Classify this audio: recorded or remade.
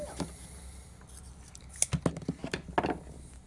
recorded